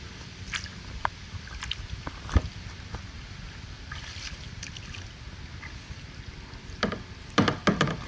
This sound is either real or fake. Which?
real